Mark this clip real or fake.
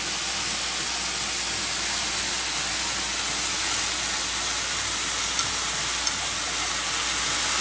real